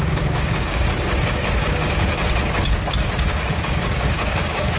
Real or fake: fake